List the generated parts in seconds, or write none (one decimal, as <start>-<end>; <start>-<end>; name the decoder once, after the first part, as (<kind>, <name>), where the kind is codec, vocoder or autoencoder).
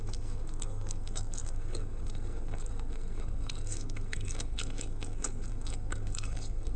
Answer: 0.0-6.8 (codec, SNAC)